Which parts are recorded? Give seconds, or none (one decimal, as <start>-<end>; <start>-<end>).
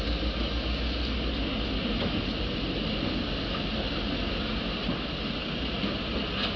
0.0-6.6